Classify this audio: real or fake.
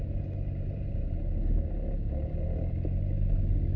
real